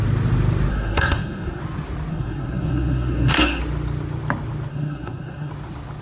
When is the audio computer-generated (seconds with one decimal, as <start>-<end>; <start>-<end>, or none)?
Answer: 0.7-1.6; 2.1-3.6; 4.7-5.5